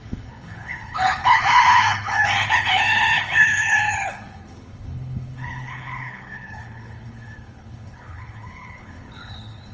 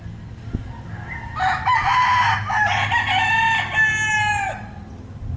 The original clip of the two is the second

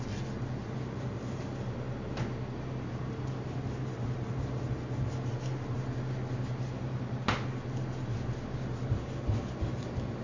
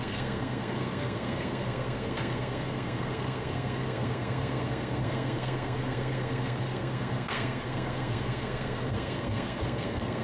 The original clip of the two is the first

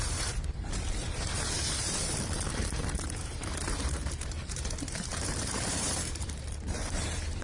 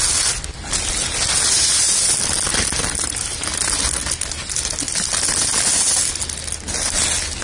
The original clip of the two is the second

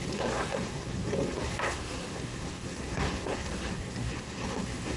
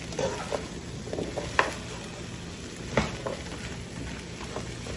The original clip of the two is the second